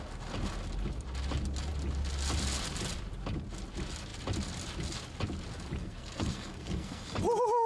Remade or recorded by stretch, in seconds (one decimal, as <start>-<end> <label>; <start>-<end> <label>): 0.0-5.8 recorded; 5.8-7.2 remade; 7.2-7.7 recorded